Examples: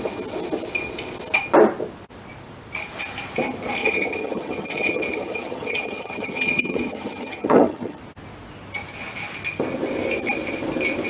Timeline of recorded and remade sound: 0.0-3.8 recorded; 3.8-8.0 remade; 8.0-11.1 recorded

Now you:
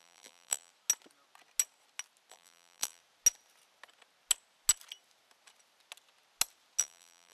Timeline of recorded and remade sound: 0.0-0.7 remade; 0.7-2.3 recorded; 2.3-3.0 remade; 3.0-6.8 recorded; 6.8-7.3 remade

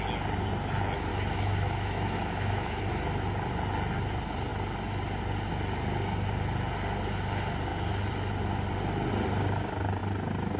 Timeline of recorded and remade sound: 0.0-1.1 recorded; 1.1-2.9 remade; 2.9-10.6 recorded

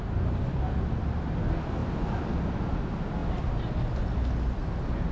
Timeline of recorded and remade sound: 0.0-5.1 recorded